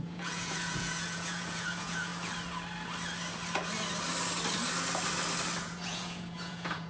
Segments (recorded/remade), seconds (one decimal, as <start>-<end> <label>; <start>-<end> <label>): 0.0-2.1 remade; 2.1-5.6 recorded; 5.6-6.9 remade

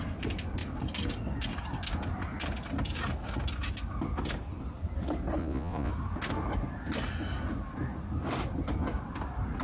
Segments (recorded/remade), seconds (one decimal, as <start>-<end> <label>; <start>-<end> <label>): 0.0-5.4 recorded; 5.4-5.9 remade; 5.9-9.6 recorded

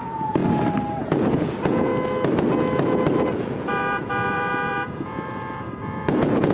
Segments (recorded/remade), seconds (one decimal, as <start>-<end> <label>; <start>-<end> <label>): 0.0-0.4 remade; 0.4-1.0 recorded; 1.0-1.9 remade; 1.9-3.3 recorded; 3.3-6.5 remade

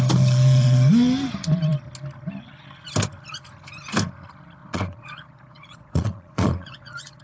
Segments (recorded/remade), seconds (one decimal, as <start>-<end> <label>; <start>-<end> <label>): 0.0-4.6 recorded; 4.6-7.2 remade

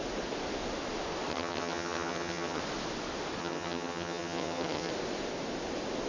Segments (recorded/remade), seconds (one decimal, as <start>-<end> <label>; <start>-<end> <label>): 0.0-1.3 recorded; 1.3-2.6 remade; 2.6-3.4 recorded; 3.4-4.9 remade; 4.9-6.1 recorded